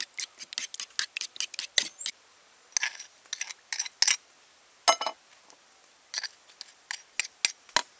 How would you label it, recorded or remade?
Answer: recorded